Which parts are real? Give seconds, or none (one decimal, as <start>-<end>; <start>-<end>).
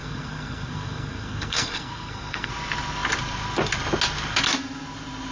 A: 2.5-5.3